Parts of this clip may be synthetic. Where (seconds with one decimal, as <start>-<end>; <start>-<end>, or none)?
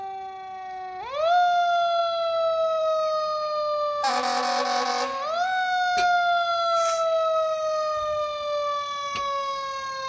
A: none